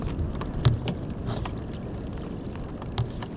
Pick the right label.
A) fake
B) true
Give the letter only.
B